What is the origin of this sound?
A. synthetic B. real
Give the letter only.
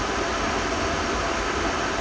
B